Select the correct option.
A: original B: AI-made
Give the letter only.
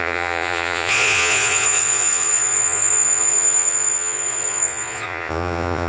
B